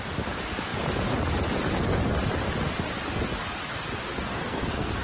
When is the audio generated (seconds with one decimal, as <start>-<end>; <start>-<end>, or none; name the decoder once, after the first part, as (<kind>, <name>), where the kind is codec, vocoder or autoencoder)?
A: 4.3-5.0 (codec, SNAC)